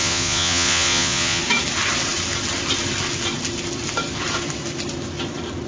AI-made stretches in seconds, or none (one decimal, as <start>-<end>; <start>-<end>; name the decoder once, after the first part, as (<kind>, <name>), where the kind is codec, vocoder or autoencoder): 0.0-1.4 (vocoder, Vocos)